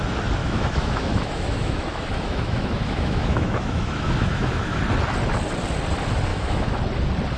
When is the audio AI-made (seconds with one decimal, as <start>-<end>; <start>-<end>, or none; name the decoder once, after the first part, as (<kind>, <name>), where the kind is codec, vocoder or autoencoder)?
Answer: 0.4-4.8 (autoencoder, DAC-VAE); 6.3-6.8